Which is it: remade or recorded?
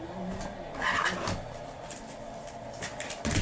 recorded